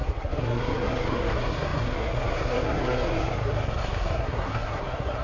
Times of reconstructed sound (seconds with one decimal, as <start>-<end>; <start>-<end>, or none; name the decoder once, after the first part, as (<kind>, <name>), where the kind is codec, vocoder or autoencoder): 0.0-5.2 (codec, SNAC)